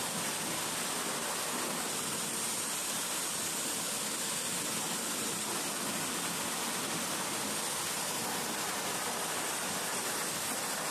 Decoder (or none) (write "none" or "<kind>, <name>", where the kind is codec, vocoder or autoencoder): none